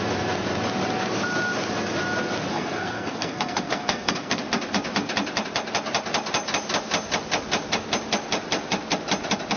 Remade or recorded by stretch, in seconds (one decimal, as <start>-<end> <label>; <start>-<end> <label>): 0.0-2.5 recorded; 2.5-4.4 remade; 4.4-9.6 recorded